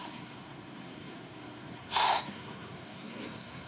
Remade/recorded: remade